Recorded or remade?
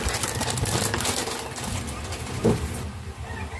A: remade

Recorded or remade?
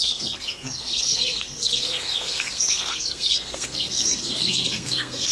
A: remade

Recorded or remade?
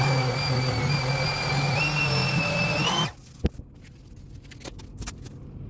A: recorded